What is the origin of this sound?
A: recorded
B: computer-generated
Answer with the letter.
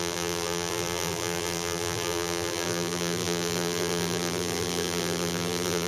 B